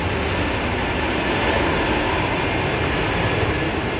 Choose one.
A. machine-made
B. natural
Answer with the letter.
B